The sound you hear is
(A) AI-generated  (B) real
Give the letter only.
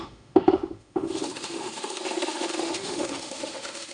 A